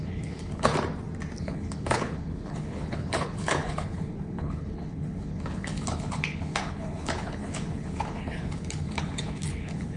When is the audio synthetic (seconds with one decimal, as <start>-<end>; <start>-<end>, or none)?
0.0-0.7; 1.4-10.0